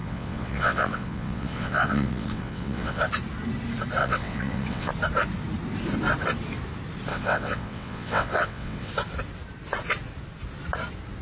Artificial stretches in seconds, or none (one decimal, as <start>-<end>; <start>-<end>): 0.0-3.0; 4.0-4.9; 7.1-8.9